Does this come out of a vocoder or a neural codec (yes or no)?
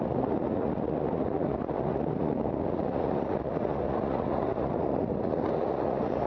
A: yes